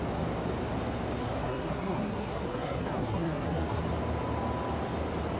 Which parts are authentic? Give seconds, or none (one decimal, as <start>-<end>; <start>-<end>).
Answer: 0.0-1.2; 3.8-5.4